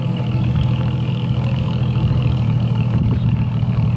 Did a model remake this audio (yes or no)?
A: yes